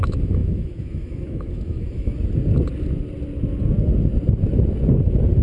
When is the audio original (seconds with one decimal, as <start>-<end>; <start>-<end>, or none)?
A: 2.1-5.4